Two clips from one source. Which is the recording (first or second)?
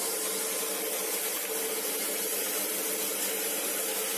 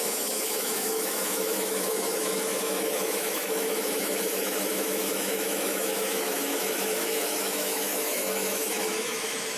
first